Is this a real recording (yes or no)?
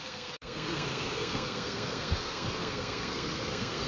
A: no